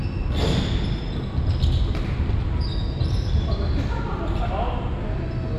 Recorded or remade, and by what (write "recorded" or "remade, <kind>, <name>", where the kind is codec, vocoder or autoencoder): recorded